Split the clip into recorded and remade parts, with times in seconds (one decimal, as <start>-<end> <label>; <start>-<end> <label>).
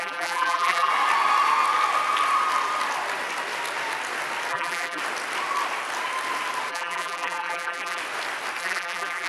0.0-0.9 remade; 0.9-4.5 recorded; 4.5-5.0 remade; 5.0-6.7 recorded; 6.7-8.0 remade; 8.0-8.6 recorded; 8.6-9.3 remade